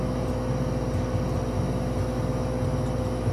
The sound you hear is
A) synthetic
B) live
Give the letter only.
B